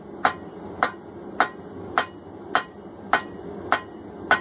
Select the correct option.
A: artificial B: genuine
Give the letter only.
B